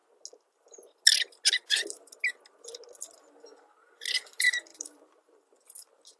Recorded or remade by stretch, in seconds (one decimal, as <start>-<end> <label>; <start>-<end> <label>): 0.0-4.7 recorded; 4.7-5.2 remade; 5.2-6.2 recorded